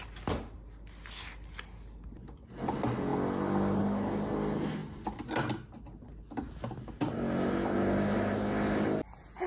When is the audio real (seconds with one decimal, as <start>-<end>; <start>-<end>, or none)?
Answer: 0.0-9.5